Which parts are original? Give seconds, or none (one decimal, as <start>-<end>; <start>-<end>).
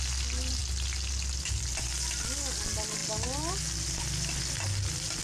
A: 0.0-5.2